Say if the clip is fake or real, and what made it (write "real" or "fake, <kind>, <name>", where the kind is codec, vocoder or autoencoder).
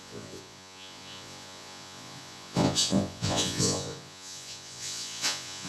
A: fake, vocoder, Vocos